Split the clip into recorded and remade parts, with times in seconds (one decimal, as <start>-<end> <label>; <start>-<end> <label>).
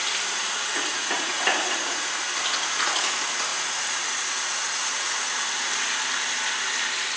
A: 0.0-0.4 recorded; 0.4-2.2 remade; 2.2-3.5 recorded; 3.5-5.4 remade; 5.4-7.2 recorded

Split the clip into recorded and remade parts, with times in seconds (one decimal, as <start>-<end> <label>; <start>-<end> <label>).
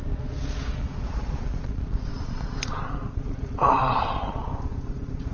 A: 0.0-5.3 remade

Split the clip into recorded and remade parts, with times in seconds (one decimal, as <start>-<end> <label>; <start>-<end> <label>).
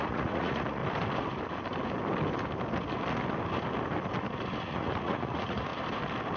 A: 0.0-0.8 remade; 0.8-4.6 recorded; 4.6-5.7 remade; 5.7-6.4 recorded